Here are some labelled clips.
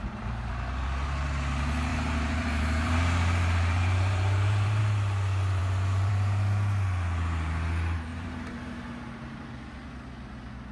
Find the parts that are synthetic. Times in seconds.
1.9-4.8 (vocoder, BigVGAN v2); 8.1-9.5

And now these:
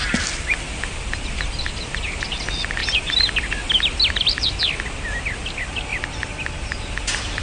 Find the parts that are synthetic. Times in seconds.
0.0-1.2 (vocoder, BigVGAN v2); 2.8-4.5; 5.9-6.4